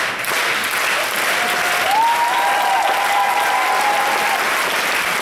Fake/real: real